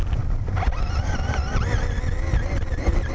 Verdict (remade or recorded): recorded